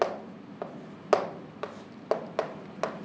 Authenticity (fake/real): real